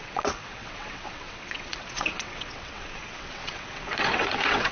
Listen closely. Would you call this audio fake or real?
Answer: fake